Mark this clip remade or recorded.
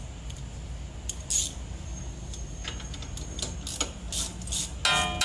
recorded